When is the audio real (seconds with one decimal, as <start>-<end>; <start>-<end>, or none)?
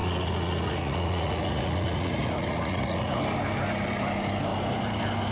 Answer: 3.2-5.3